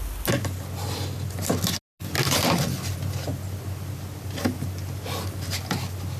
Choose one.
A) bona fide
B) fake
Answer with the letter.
A